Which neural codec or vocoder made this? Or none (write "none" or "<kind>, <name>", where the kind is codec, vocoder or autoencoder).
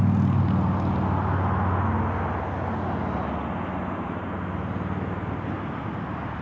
none